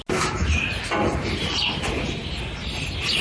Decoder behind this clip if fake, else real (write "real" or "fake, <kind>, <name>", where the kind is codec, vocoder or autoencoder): real